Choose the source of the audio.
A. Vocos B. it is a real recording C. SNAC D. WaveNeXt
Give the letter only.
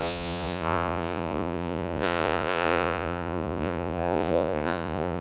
A